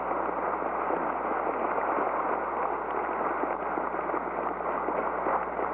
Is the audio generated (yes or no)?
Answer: no